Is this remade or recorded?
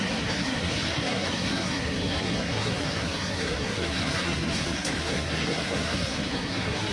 remade